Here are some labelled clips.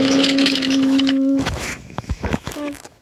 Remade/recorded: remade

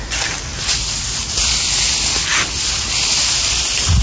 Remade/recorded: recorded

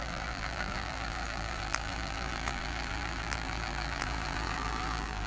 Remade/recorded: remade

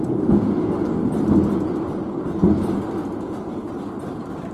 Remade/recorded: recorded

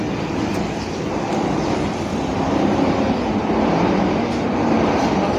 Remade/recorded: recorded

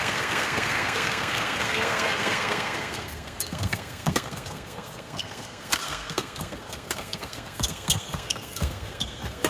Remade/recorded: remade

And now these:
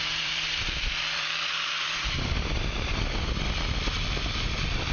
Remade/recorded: remade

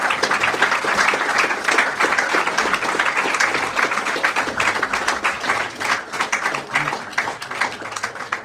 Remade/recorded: recorded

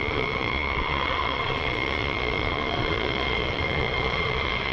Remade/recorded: remade